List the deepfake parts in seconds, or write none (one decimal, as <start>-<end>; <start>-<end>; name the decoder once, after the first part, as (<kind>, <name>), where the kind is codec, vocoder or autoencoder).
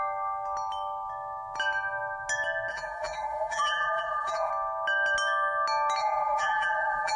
2.7-4.5 (vocoder, BigVGAN v2); 6.0-7.2